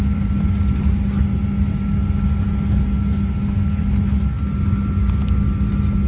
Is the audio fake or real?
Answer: real